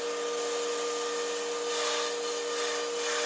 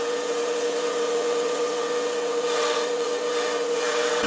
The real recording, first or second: first